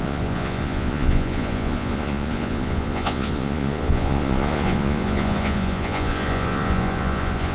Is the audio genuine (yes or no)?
no